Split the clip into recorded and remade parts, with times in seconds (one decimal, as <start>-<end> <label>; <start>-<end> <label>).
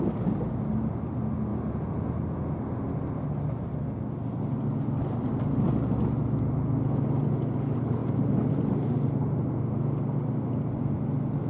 0.0-1.5 recorded; 1.5-2.1 remade; 2.1-11.5 recorded